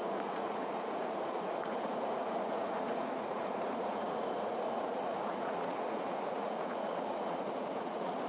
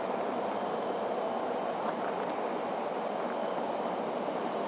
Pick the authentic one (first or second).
second